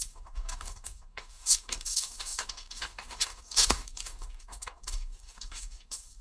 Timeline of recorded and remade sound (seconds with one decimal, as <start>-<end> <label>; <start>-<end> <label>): 0.0-6.2 remade